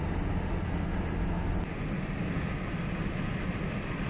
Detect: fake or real real